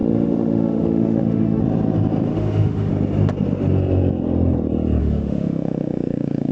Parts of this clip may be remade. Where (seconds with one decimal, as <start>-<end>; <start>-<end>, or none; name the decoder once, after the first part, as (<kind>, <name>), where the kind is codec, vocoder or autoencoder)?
0.0-1.6 (autoencoder, DAC-VAE); 2.3-2.9; 5.0-6.5

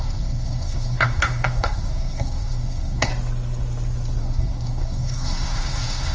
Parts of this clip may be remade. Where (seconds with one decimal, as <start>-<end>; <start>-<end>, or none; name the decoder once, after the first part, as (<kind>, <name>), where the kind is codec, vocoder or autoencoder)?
0.0-3.1 (codec, SNAC); 4.2-6.1